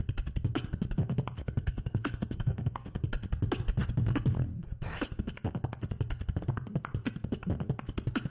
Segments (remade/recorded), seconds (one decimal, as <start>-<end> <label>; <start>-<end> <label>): 0.0-1.4 recorded; 1.4-3.0 remade; 3.0-8.3 recorded